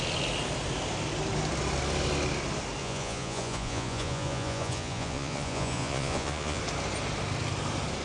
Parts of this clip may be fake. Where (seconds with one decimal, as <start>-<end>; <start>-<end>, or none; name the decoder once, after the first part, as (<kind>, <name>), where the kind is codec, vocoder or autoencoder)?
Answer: 2.8-6.6 (vocoder, Vocos)